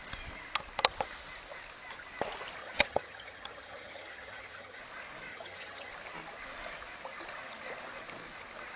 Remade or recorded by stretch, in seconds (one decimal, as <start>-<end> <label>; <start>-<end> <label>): 0.0-2.6 recorded; 2.6-4.8 remade; 4.8-5.3 recorded; 5.3-5.9 remade; 5.9-8.8 recorded